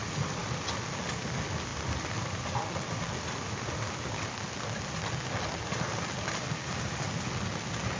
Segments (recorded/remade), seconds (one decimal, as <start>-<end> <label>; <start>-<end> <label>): 0.0-8.0 recorded

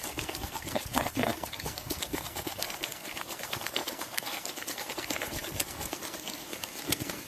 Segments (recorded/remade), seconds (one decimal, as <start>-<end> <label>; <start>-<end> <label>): 0.0-7.3 remade

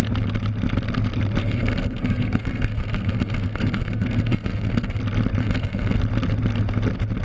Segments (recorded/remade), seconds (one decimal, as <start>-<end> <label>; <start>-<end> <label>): 0.0-1.4 recorded; 1.4-5.0 remade; 5.0-5.4 recorded; 5.4-6.0 remade; 6.0-7.2 recorded

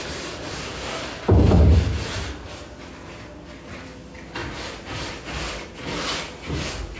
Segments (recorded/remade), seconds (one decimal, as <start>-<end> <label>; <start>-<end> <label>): 0.0-0.5 recorded; 0.5-1.0 remade; 1.0-7.0 recorded

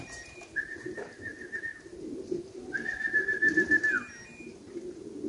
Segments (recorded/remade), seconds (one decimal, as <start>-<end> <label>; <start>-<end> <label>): 0.0-5.3 recorded

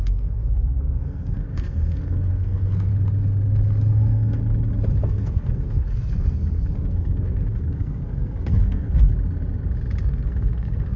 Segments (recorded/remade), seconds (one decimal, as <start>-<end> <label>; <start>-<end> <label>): 0.0-2.9 remade; 2.9-3.9 recorded; 3.9-4.4 remade; 4.4-5.0 recorded; 5.0-9.1 remade; 9.1-10.0 recorded; 10.0-11.0 remade